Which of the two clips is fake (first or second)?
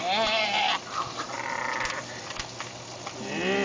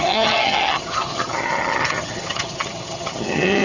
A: second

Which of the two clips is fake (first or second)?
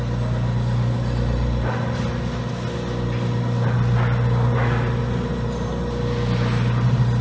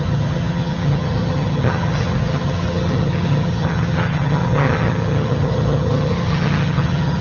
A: second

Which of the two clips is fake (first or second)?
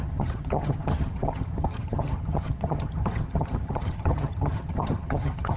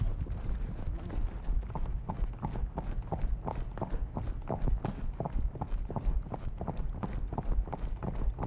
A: first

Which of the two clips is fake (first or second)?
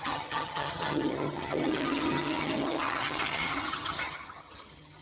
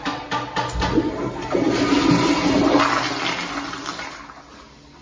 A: first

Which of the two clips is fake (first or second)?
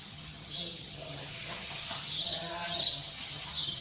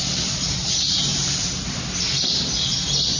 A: first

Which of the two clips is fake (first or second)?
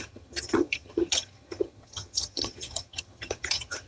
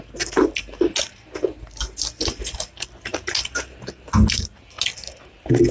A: first